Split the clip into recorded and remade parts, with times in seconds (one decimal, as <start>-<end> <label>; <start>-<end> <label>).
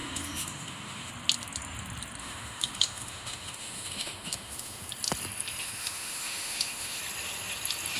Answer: 0.0-1.1 remade; 1.1-2.2 recorded; 2.2-4.9 remade; 4.9-5.6 recorded; 5.6-7.0 remade; 7.0-8.0 recorded